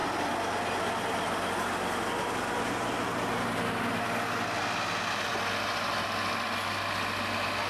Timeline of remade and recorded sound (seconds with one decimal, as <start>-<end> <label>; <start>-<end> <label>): 0.0-7.7 recorded